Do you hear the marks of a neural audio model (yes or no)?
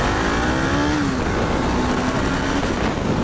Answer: no